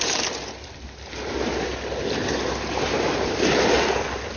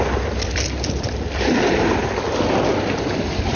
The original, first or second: first